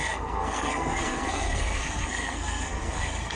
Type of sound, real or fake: fake